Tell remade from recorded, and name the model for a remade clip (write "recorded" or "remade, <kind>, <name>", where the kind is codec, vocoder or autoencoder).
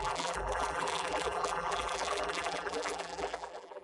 remade, vocoder, BigVGAN v2